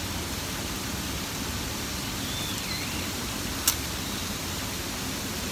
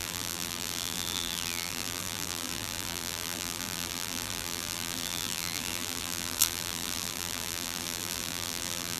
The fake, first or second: second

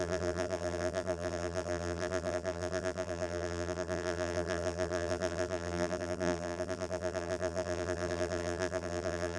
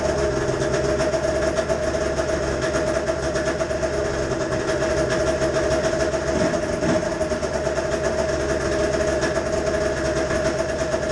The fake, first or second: first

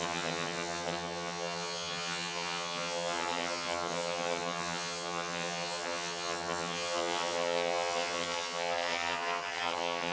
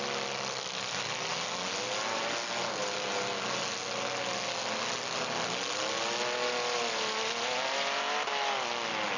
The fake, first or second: first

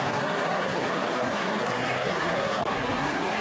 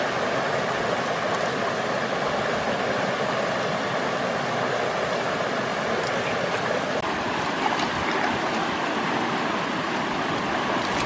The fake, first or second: first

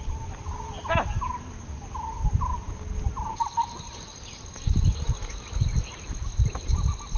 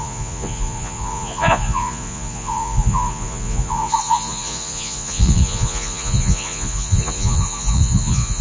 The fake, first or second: second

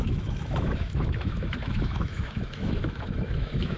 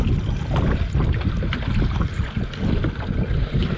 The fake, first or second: first